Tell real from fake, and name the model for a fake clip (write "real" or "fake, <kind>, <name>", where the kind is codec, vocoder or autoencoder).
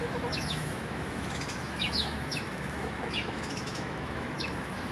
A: fake, autoencoder, DAC-VAE